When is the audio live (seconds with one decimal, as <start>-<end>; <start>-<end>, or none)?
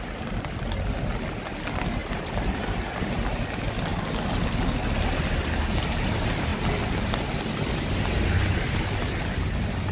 0.0-2.0; 3.4-9.9